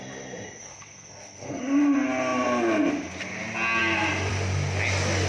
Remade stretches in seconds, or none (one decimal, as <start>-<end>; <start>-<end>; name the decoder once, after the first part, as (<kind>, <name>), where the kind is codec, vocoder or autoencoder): 0.6-1.6 (codec, SNAC)